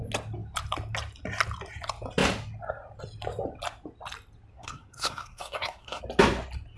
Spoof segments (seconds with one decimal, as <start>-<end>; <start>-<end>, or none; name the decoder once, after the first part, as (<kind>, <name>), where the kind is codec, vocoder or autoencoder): 4.5-6.0 (codec, SNAC)